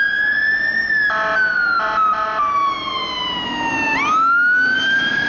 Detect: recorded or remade recorded